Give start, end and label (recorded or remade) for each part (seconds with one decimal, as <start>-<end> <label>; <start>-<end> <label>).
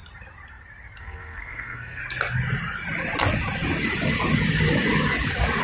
0.0-1.0 recorded; 1.0-2.0 remade; 2.0-5.6 recorded